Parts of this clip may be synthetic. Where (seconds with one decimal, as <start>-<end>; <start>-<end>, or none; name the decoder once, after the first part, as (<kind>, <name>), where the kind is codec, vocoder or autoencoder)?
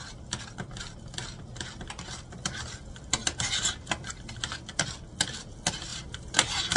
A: 5.9-6.8 (vocoder, BigVGAN v2)